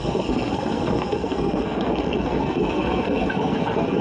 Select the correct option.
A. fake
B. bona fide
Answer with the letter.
A